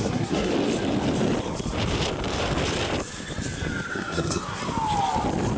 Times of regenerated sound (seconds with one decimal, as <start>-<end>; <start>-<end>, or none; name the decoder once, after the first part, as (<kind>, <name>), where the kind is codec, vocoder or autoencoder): 0.0-0.5 (codec, SNAC); 3.9-4.6